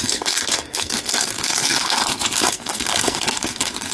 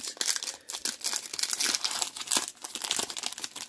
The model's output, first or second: first